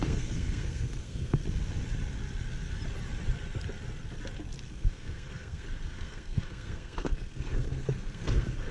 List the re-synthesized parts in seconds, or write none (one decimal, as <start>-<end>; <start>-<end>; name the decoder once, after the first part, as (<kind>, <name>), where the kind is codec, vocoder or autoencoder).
0.0-1.4 (codec, SNAC); 4.7-8.7